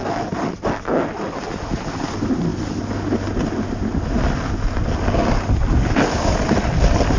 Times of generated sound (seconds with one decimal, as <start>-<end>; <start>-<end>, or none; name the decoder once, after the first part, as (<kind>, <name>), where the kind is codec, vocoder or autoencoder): none